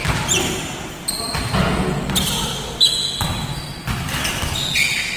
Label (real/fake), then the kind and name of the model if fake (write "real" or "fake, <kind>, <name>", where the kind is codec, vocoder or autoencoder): real